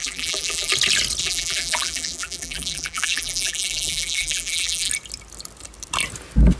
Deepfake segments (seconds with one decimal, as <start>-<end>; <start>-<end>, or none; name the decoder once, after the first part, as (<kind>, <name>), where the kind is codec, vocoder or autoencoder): 0.0-0.7 (vocoder, BigVGAN v2); 1.2-4.9